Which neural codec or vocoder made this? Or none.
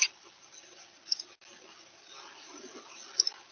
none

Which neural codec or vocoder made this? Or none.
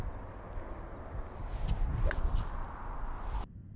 none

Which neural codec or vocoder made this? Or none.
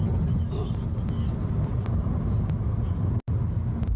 none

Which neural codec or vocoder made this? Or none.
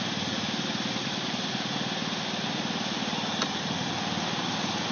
none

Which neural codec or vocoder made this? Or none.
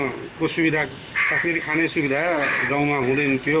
codec, DAC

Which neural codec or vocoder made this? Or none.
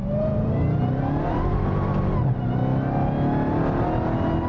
none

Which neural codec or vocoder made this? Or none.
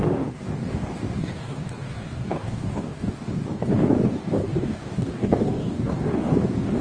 codec, DAC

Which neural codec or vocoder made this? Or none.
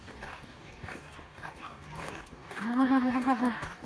codec, DAC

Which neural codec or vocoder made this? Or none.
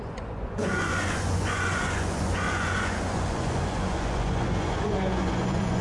vocoder, Vocos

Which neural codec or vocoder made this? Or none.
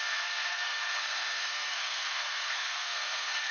codec, SNAC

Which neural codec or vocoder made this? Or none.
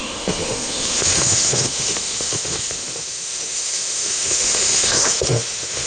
autoencoder, DAC-VAE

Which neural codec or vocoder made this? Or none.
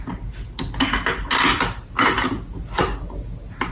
none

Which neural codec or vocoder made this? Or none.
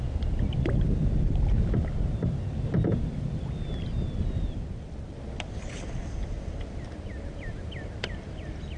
none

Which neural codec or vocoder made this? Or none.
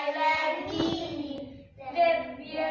none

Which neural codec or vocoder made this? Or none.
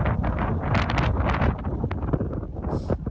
none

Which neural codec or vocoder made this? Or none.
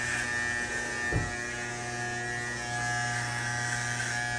none